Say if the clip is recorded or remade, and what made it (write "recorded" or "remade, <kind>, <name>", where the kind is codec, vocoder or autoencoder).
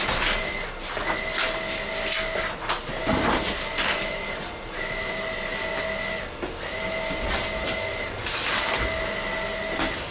recorded